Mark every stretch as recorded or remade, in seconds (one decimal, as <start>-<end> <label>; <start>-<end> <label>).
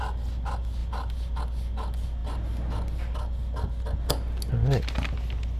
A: 0.0-5.6 recorded